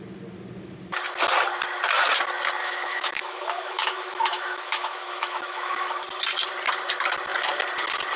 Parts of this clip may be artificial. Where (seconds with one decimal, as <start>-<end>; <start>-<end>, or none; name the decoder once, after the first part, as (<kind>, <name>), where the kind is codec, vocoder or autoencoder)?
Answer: 2.6-5.9 (autoencoder, DAC-VAE)